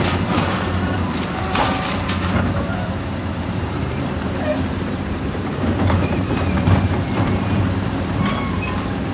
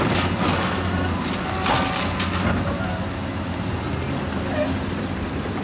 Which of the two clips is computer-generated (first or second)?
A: first